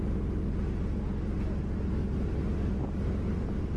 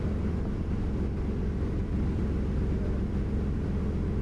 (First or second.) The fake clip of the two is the second